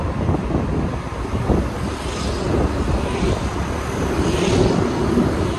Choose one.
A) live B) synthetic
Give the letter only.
A